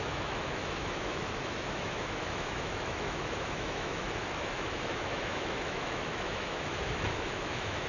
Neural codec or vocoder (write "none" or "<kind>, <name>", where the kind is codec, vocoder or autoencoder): autoencoder, DAC-VAE